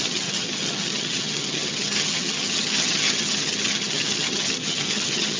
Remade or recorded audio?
remade